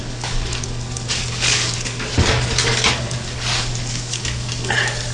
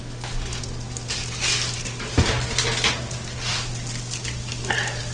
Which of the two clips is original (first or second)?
second